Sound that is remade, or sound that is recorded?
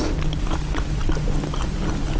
recorded